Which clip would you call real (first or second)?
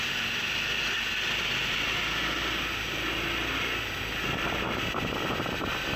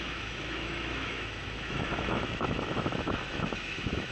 first